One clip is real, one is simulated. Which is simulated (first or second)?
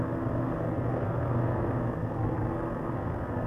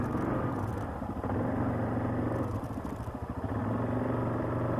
first